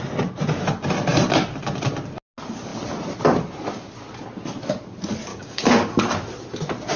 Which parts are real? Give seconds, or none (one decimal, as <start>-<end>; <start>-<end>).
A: 0.0-5.3; 5.9-7.0